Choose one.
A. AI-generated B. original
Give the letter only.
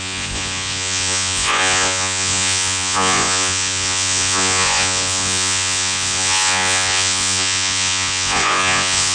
A